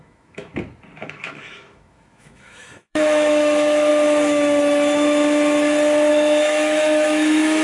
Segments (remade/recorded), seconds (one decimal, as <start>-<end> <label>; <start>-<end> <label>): 0.0-0.5 remade; 0.5-1.0 recorded; 1.0-3.9 remade; 3.9-6.1 recorded; 6.1-7.6 remade